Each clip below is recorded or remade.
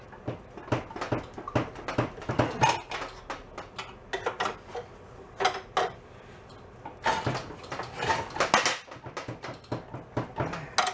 recorded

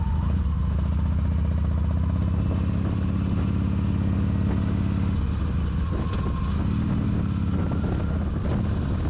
recorded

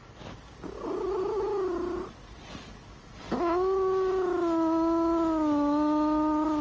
recorded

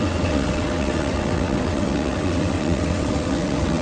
remade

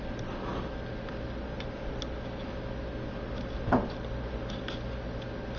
recorded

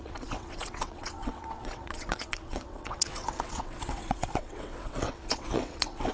remade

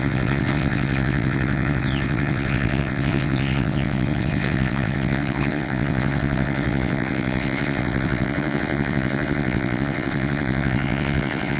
remade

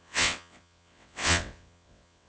remade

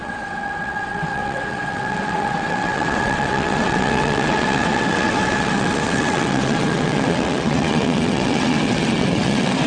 remade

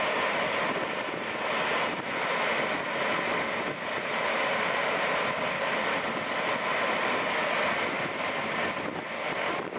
recorded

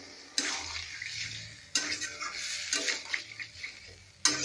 recorded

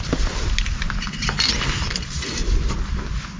recorded